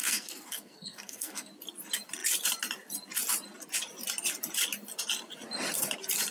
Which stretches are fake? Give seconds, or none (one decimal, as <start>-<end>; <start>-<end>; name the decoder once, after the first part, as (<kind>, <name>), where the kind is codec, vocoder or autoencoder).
0.0-1.5 (codec, SNAC)